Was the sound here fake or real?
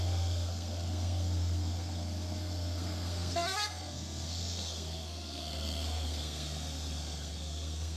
fake